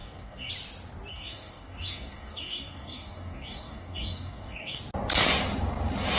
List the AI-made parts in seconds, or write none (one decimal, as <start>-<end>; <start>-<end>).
0.0-0.5; 1.1-4.8